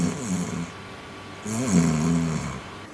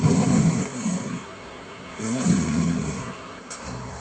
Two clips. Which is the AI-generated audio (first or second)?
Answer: second